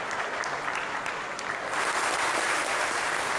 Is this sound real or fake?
real